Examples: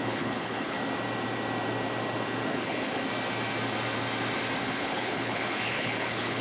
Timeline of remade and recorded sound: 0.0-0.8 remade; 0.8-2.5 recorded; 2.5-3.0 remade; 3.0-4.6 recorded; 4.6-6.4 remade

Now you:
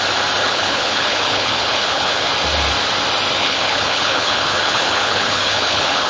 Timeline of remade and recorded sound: 0.0-0.4 recorded; 0.4-2.3 remade; 2.3-3.4 recorded; 3.4-6.1 remade

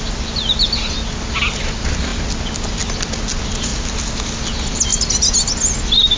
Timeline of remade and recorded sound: 0.0-6.2 recorded

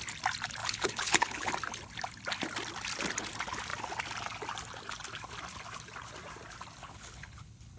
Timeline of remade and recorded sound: 0.0-0.6 recorded; 0.6-1.5 remade; 1.5-6.8 recorded; 6.8-7.8 remade

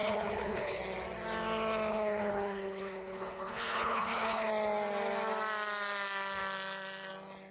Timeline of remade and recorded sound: 0.0-0.8 remade; 0.8-1.9 recorded; 1.9-4.5 remade; 4.5-7.5 recorded

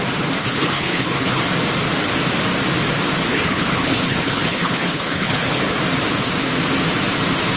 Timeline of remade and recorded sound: 0.0-0.4 recorded; 0.4-1.4 remade; 1.4-3.3 recorded; 3.3-5.8 remade; 5.8-7.6 recorded